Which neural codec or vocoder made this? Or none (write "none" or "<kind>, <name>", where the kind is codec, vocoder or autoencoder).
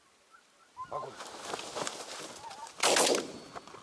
none